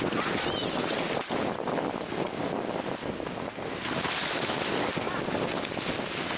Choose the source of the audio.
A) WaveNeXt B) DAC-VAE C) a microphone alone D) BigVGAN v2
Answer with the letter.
C